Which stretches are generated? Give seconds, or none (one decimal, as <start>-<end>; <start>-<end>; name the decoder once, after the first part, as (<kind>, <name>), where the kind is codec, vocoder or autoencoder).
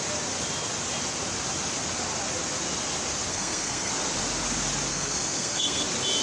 3.3-3.9 (codec, SNAC); 4.9-5.8